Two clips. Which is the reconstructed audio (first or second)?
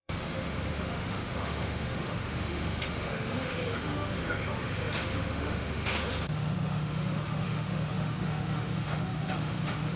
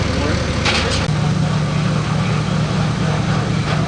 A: first